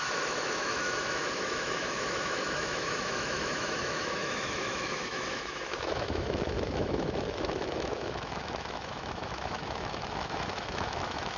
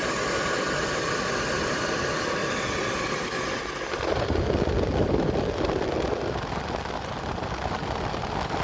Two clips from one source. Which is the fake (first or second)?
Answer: first